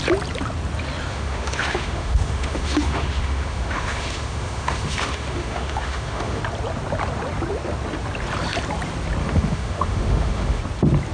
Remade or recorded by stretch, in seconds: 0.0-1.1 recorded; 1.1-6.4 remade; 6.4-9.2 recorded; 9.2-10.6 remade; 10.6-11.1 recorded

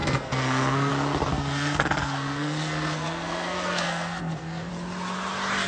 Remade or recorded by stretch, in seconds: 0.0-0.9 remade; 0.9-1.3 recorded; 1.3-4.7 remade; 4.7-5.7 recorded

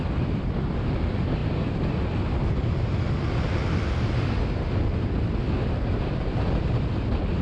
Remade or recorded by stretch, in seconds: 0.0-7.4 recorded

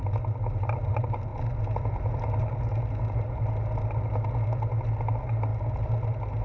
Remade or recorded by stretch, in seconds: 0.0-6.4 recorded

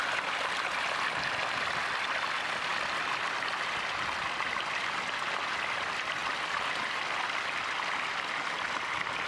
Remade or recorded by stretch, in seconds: 0.0-9.3 recorded

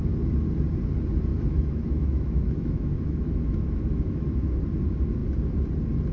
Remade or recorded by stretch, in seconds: 0.0-1.3 recorded; 1.3-4.6 remade; 4.6-6.1 recorded

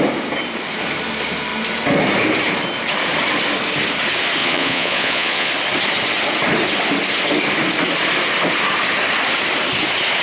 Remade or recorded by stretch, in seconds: 0.0-4.4 recorded; 4.4-5.5 remade; 5.5-10.2 recorded

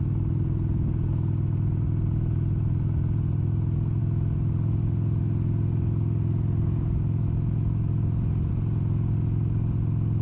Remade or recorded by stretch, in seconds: 0.0-10.2 recorded